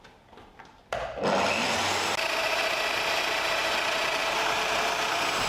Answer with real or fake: real